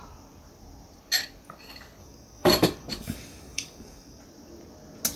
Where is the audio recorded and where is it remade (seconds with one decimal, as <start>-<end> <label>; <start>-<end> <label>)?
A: 0.0-2.0 recorded; 2.0-4.2 remade; 4.2-5.2 recorded

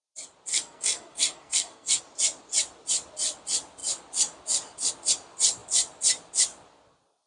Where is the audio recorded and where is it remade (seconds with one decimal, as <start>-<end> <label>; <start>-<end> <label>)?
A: 0.0-0.5 recorded; 0.5-2.0 remade; 2.0-7.3 recorded

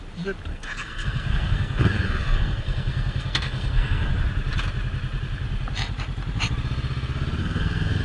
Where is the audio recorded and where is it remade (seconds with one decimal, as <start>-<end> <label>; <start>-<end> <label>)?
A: 0.0-0.5 recorded; 0.5-4.1 remade; 4.1-7.4 recorded; 7.4-8.0 remade

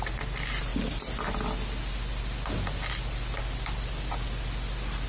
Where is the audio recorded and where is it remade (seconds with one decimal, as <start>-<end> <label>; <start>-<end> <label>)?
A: 0.0-5.1 recorded

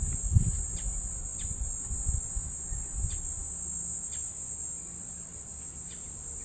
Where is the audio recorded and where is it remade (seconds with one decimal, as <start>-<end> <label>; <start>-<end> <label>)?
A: 0.0-6.4 recorded

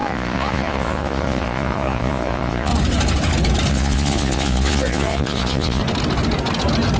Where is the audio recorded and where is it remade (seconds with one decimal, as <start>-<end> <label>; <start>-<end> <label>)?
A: 0.0-2.7 remade; 2.7-3.7 recorded; 3.7-5.8 remade; 5.8-7.0 recorded